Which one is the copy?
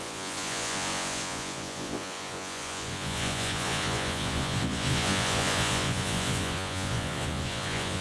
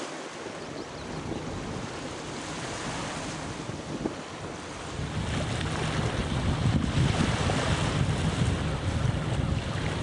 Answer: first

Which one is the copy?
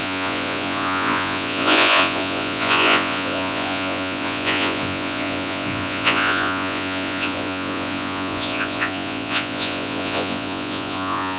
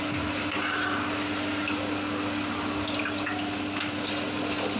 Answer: first